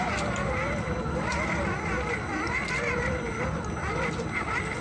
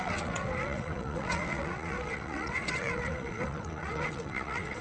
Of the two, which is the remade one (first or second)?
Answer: second